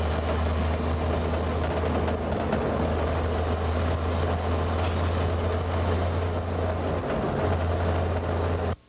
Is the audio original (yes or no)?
yes